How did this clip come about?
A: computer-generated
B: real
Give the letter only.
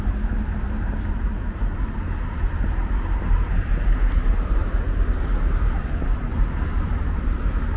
A